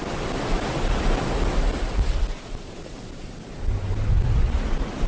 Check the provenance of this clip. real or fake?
real